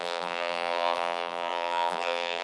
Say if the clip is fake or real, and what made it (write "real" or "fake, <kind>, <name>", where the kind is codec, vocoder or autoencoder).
fake, vocoder, BigVGAN v2